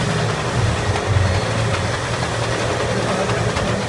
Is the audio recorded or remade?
recorded